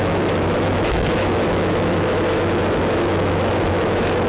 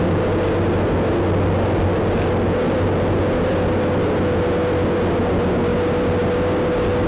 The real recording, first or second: second